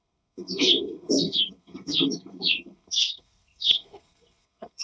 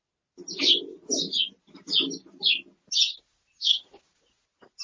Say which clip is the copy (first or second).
first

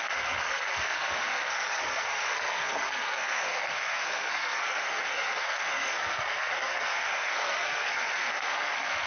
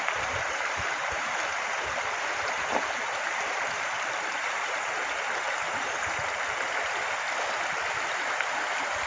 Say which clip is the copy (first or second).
first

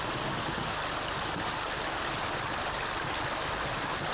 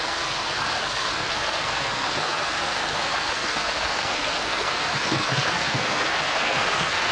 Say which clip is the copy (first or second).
second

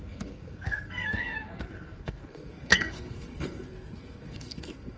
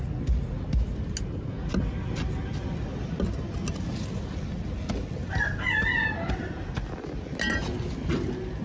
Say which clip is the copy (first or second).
first